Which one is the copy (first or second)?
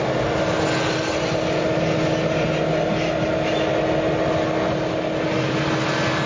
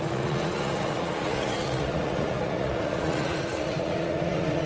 second